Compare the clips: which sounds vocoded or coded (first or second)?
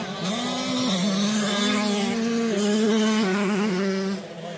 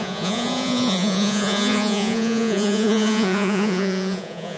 second